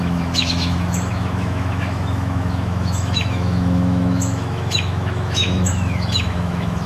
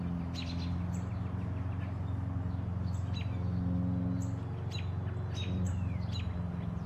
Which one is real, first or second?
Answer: second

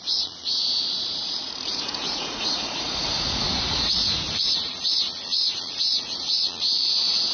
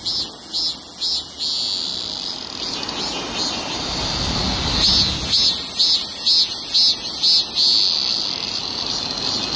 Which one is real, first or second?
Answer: second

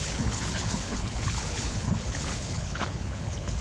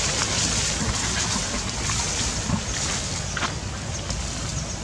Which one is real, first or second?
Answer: second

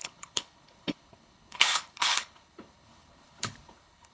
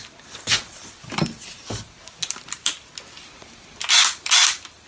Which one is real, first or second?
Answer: second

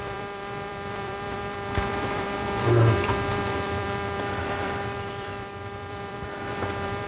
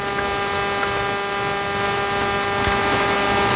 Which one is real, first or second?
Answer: second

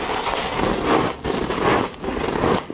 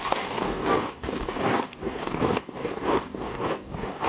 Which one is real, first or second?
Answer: first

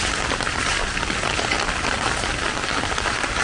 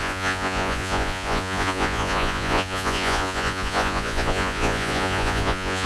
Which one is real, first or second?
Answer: first